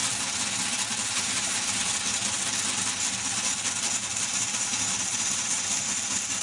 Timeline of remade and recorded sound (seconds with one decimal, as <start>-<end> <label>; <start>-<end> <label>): 0.0-1.1 recorded; 1.1-1.8 remade; 1.8-4.1 recorded; 4.1-6.4 remade